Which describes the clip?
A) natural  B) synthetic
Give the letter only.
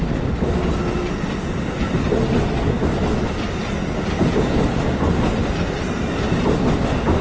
A